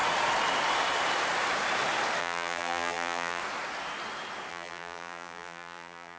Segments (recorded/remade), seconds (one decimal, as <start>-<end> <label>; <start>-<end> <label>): 0.0-2.2 recorded; 2.2-3.4 remade; 3.4-4.5 recorded; 4.5-6.2 remade